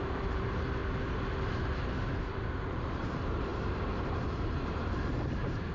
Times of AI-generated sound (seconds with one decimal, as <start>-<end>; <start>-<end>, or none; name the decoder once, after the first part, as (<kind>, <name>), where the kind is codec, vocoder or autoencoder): 0.0-0.8 (vocoder, BigVGAN v2); 1.4-5.7